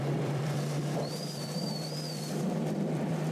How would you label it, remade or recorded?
remade